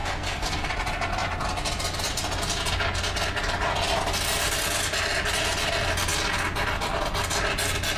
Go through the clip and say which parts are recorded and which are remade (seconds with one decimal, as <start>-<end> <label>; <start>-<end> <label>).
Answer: 0.0-0.7 remade; 0.7-8.0 recorded